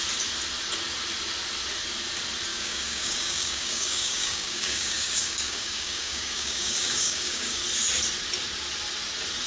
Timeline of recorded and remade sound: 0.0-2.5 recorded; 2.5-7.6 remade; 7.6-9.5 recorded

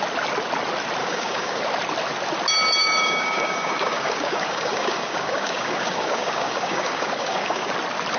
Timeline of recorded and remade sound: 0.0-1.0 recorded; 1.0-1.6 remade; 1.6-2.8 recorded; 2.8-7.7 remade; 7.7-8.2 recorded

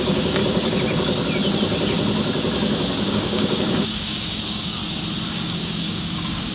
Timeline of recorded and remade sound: 0.0-0.4 remade; 0.4-3.1 recorded; 3.1-4.8 remade; 4.8-5.3 recorded; 5.3-6.5 remade